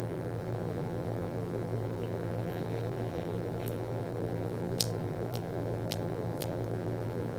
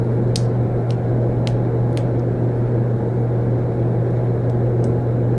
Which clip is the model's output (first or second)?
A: first